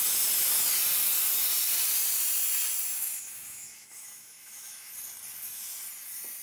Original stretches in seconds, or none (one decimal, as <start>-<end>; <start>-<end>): 0.0-2.9; 4.9-6.4